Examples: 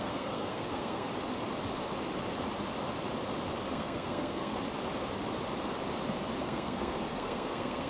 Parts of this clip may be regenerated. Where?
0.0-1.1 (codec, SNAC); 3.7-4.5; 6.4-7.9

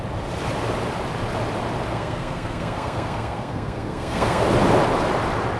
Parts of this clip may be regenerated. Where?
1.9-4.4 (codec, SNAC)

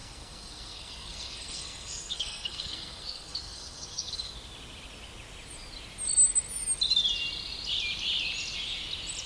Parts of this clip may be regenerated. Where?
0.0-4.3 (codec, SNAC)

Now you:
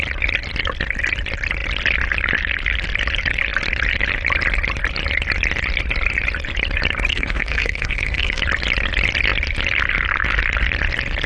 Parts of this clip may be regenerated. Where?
7.1-8.4 (codec, SNAC)